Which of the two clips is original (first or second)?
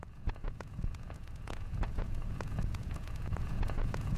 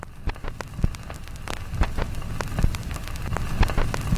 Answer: second